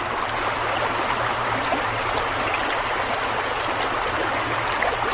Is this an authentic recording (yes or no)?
yes